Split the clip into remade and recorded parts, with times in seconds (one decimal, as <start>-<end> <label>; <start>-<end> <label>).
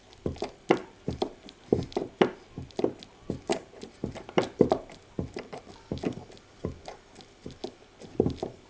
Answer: 0.0-0.8 recorded; 0.8-1.4 remade; 1.4-3.5 recorded; 3.5-5.7 remade; 5.7-8.7 recorded